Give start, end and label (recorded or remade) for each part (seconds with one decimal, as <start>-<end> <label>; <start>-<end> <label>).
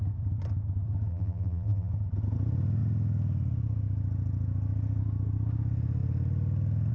0.0-1.1 recorded; 1.1-1.9 remade; 1.9-6.9 recorded